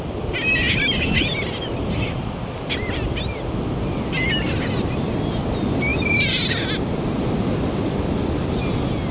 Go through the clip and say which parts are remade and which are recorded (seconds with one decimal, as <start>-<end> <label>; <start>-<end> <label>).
0.0-9.1 recorded